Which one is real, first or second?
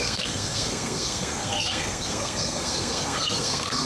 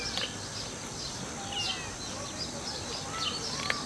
second